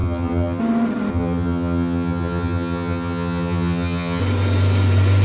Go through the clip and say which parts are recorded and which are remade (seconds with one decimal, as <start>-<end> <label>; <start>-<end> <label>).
0.0-0.6 remade; 0.6-1.1 recorded; 1.1-4.2 remade; 4.2-5.2 recorded